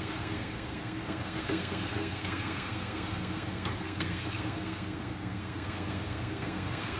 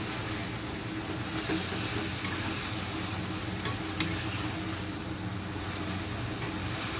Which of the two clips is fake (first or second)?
first